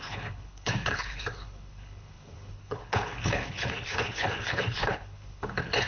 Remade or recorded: remade